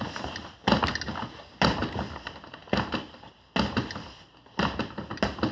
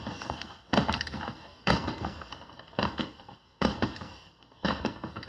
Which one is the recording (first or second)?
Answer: first